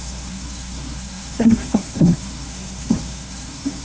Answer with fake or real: fake